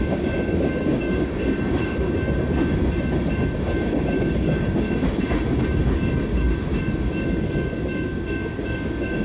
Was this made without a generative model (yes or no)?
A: no